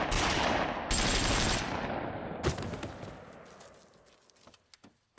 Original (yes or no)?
yes